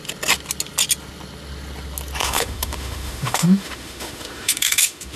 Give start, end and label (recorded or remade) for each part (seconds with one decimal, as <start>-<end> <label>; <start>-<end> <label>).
0.0-2.2 recorded; 2.2-5.2 remade